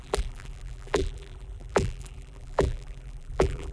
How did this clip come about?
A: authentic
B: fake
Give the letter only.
B